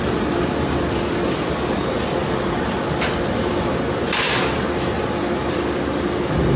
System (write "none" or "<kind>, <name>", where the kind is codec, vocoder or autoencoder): none